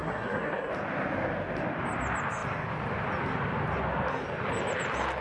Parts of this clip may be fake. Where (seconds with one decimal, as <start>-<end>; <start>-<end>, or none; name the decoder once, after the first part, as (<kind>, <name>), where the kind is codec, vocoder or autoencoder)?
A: 0.0-0.7 (codec, SNAC)